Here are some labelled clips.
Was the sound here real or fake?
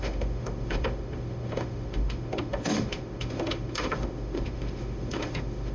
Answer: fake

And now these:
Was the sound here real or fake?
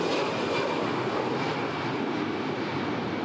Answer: real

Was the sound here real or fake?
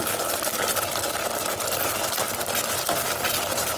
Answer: real